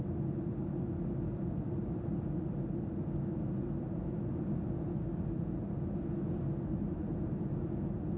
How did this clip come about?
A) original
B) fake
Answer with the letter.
A